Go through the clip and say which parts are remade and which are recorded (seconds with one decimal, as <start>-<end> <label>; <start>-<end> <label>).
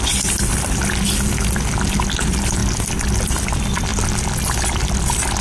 0.0-0.8 remade; 0.8-2.2 recorded; 2.2-2.6 remade; 2.6-3.2 recorded; 3.2-3.9 remade; 3.9-4.7 recorded; 4.7-5.4 remade